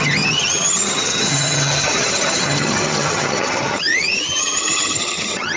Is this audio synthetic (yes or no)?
yes